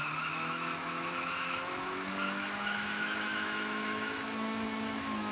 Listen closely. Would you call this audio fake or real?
fake